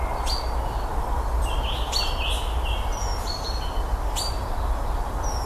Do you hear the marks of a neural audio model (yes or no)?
no